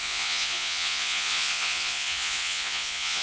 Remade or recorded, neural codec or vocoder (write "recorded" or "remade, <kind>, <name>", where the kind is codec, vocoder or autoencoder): remade, vocoder, Vocos